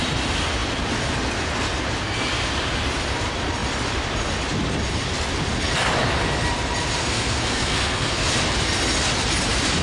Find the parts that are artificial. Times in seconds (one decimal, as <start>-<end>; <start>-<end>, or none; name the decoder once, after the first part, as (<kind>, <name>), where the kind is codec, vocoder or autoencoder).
7.0-8.3 (codec, SNAC)